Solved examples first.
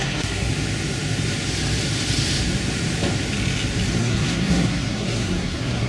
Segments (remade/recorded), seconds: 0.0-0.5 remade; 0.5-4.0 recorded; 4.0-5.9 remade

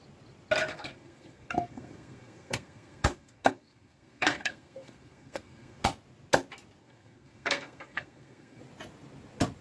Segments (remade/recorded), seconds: 0.0-0.7 recorded; 0.7-5.8 remade; 5.8-6.8 recorded; 6.8-8.6 remade; 8.6-9.6 recorded

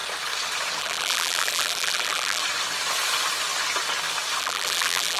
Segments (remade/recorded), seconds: 0.0-0.8 recorded; 0.8-2.4 remade; 2.4-4.4 recorded; 4.4-5.2 remade

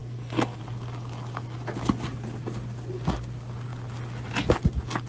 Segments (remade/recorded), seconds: 0.0-0.6 remade; 0.6-5.1 recorded

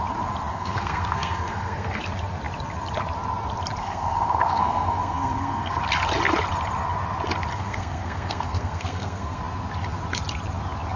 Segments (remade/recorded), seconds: 0.0-0.5 recorded; 0.5-2.0 remade; 2.0-3.8 recorded; 3.8-5.8 remade; 5.8-7.5 recorded; 7.5-9.4 remade; 9.4-11.0 recorded

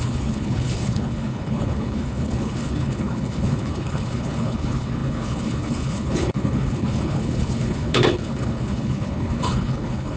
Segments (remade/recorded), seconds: 0.0-10.2 remade